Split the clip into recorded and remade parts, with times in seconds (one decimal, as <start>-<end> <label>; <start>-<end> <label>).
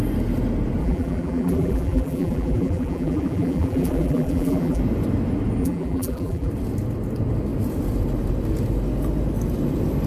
0.0-0.8 recorded; 0.8-4.8 remade; 4.8-5.6 recorded; 5.6-6.5 remade; 6.5-10.1 recorded